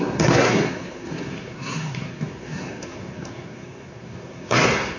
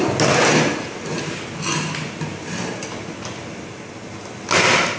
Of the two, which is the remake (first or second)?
first